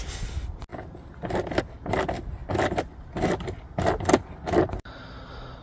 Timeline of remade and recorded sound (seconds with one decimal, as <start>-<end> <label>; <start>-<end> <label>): 0.0-0.7 recorded; 0.7-1.6 remade; 1.6-2.4 recorded; 2.4-4.6 remade; 4.6-5.6 recorded